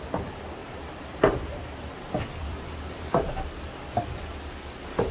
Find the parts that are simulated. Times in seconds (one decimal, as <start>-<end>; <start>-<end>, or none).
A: 0.6-1.6; 2.4-3.3